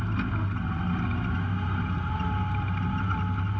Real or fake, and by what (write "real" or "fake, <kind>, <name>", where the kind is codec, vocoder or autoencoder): real